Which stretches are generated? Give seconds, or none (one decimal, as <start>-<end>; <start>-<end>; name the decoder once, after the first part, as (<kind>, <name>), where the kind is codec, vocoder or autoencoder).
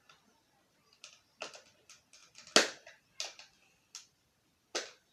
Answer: none